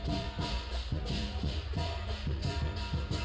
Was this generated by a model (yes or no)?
yes